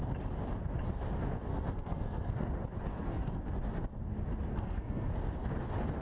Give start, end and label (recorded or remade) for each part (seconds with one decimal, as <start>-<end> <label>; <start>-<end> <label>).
0.0-1.5 recorded; 1.5-2.5 remade; 2.5-2.9 recorded; 2.9-3.5 remade; 3.5-4.5 recorded; 4.5-5.1 remade; 5.1-6.0 recorded